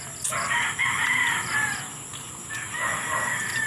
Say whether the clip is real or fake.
real